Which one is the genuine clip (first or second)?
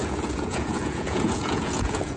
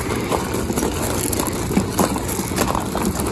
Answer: second